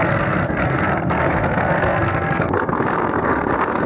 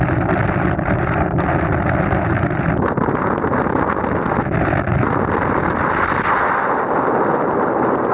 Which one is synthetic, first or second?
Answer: first